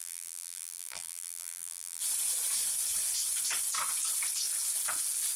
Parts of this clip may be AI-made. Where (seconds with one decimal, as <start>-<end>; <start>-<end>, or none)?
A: 0.0-2.0